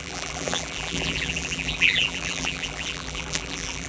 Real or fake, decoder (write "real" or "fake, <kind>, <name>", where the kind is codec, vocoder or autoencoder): fake, vocoder, BigVGAN v2